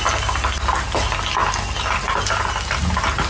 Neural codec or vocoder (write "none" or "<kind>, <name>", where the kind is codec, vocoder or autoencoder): none